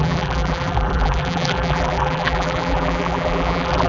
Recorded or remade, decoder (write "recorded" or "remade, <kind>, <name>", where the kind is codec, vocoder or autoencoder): remade, vocoder, BigVGAN v2